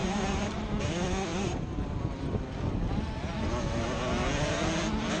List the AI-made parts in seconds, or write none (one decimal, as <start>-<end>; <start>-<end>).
0.0-0.8; 1.3-2.0